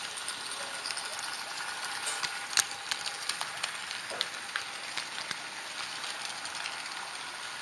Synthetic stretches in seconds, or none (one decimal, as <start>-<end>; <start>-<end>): none